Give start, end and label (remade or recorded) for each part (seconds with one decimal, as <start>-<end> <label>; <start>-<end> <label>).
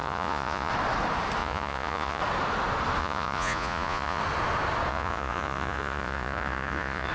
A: 0.0-0.7 remade; 0.7-1.4 recorded; 1.4-2.2 remade; 2.2-3.0 recorded; 3.0-4.2 remade; 4.2-4.9 recorded; 4.9-7.1 remade